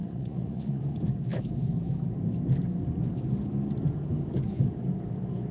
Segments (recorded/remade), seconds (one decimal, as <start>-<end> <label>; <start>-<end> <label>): 0.0-0.8 remade; 0.8-5.5 recorded